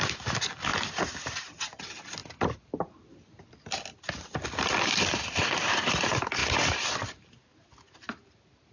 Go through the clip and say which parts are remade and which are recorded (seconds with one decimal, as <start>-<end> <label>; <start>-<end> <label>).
0.0-8.7 recorded